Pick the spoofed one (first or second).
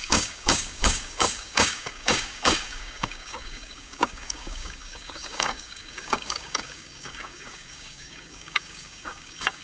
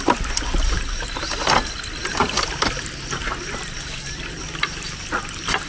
first